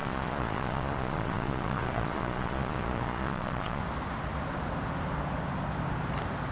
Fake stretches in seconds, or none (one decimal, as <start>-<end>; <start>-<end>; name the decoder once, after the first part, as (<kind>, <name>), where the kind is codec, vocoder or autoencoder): 0.0-3.8 (vocoder, Vocos)